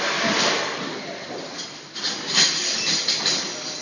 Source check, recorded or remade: remade